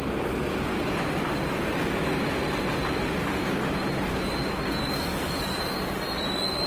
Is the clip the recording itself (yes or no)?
yes